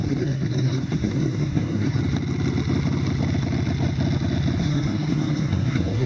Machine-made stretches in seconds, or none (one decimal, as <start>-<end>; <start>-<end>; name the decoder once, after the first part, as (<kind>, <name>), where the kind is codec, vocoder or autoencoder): 0.0-2.0 (codec, SNAC); 4.6-6.1